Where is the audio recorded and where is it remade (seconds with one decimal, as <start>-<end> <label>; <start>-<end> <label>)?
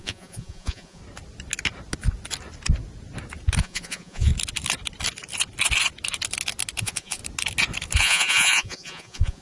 0.0-1.0 remade; 1.0-3.6 recorded; 3.6-4.3 remade; 4.3-6.8 recorded; 6.8-7.2 remade; 7.2-8.0 recorded; 8.0-9.4 remade